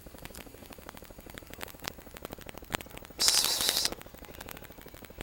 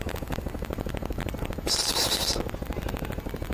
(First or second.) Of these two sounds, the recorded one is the second